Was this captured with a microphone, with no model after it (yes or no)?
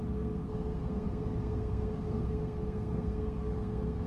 no